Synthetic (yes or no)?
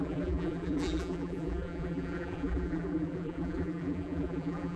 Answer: yes